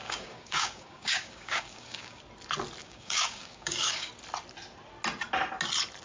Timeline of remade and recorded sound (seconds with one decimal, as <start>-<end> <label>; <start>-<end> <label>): 0.0-2.2 remade; 2.2-2.8 recorded; 2.8-4.1 remade; 4.1-6.0 recorded